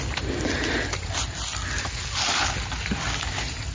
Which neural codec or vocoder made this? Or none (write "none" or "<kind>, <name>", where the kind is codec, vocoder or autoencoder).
none